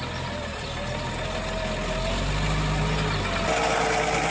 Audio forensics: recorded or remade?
recorded